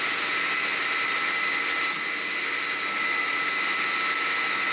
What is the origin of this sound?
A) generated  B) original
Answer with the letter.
B